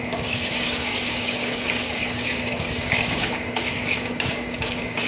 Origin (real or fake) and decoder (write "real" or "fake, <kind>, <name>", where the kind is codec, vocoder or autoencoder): fake, codec, DAC